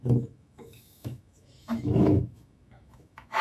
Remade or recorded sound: remade